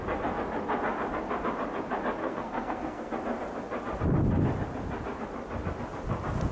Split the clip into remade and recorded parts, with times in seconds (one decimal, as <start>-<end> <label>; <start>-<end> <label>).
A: 0.0-2.2 recorded; 2.2-3.1 remade; 3.1-6.5 recorded